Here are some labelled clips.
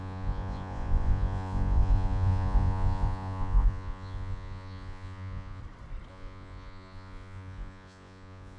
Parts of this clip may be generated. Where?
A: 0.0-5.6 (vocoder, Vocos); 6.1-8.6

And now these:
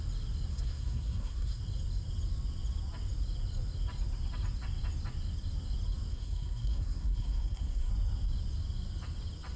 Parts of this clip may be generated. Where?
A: 0.5-1.6 (codec, SNAC); 6.1-7.9

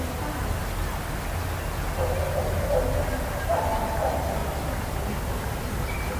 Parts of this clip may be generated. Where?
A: none

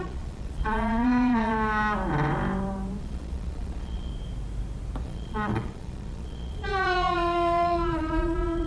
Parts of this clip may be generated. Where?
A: 0.0-1.5 (vocoder, Vocos); 3.0-4.1; 5.0-8.7

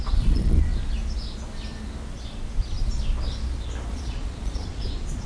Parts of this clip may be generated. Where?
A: 0.0-0.7 (vocoder, Vocos); 3.9-5.3